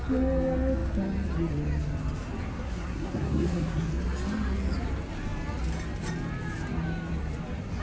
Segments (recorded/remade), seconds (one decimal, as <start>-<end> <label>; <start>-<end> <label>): 0.0-2.5 recorded; 2.5-3.9 remade; 3.9-7.8 recorded